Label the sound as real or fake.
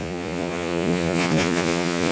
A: fake